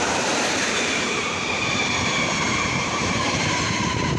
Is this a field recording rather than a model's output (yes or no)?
no